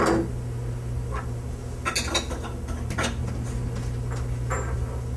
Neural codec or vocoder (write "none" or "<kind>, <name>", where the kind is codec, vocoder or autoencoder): none